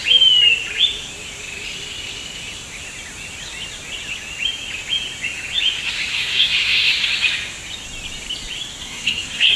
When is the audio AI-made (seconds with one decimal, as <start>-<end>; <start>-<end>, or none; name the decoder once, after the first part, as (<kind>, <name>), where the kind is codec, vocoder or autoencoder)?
6.1-6.9 (codec, SNAC); 8.8-9.6